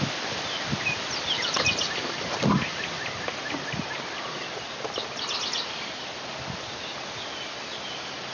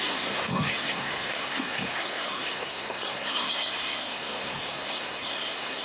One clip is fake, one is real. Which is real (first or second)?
first